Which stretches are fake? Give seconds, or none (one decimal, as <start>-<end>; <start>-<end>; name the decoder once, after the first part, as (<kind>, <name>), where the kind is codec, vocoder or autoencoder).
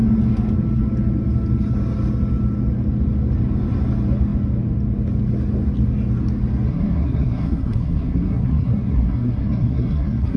6.7-10.4 (codec, SNAC)